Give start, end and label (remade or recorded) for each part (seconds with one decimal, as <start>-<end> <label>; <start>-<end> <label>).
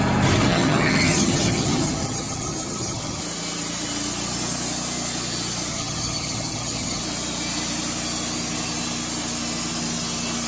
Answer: 0.0-0.5 recorded; 0.5-3.2 remade; 3.2-5.7 recorded; 5.7-7.0 remade; 7.0-10.5 recorded